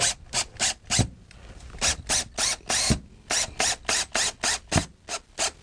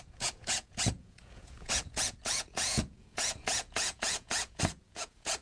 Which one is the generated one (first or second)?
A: second